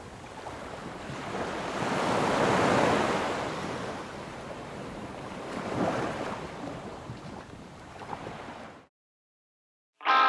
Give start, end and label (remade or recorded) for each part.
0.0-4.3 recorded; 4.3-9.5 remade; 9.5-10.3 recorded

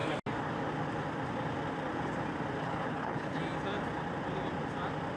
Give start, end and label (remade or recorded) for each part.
0.0-2.6 recorded; 2.6-3.4 remade; 3.4-5.2 recorded

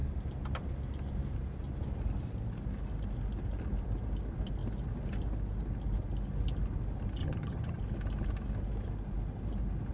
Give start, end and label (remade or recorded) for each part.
0.0-7.2 recorded; 7.2-7.8 remade; 7.8-9.9 recorded

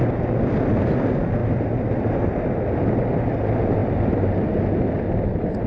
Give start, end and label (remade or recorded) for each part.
0.0-1.4 recorded; 1.4-2.2 remade; 2.2-5.7 recorded

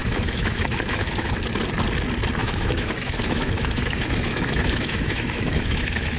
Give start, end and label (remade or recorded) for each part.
0.0-1.3 remade; 1.3-2.4 recorded; 2.4-6.2 remade

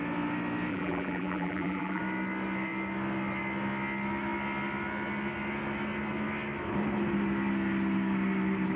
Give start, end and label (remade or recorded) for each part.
0.0-0.7 recorded; 0.7-2.0 remade; 2.0-8.8 recorded